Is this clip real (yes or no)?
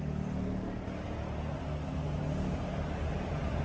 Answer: yes